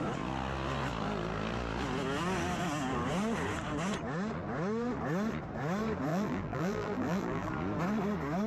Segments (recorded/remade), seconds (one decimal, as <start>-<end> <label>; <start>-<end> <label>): 0.0-6.1 recorded; 6.1-7.5 remade; 7.5-8.5 recorded